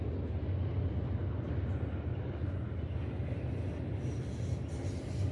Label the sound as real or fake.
real